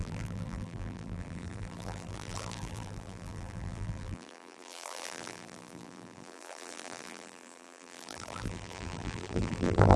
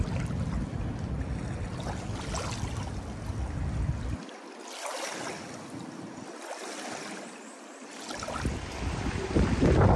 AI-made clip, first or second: first